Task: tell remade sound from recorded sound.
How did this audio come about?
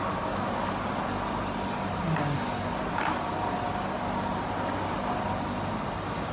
recorded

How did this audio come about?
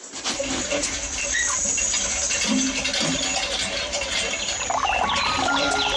recorded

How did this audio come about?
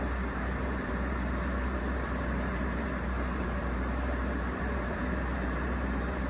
remade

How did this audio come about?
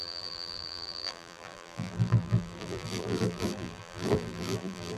remade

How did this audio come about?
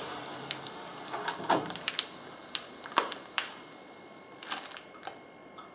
remade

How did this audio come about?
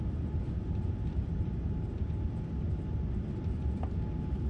recorded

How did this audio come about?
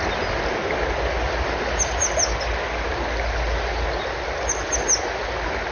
recorded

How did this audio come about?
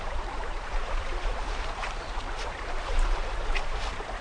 remade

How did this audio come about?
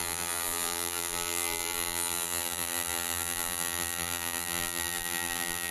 remade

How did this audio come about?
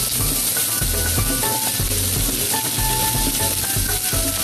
recorded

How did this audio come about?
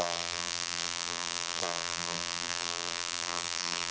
remade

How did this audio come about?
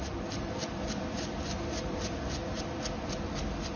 recorded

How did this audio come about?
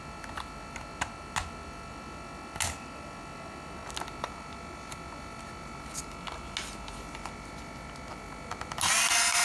recorded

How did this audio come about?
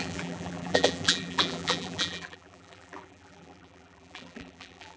remade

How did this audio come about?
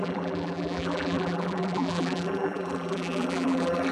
remade